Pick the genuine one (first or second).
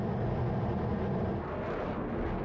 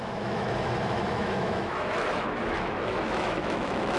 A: first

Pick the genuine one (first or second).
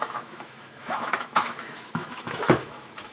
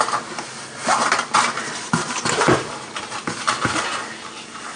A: second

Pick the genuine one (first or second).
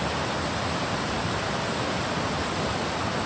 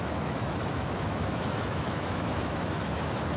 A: first